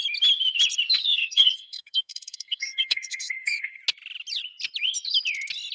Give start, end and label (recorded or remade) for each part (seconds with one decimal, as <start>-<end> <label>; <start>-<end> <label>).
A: 0.0-1.0 recorded; 1.0-3.8 remade; 3.8-5.7 recorded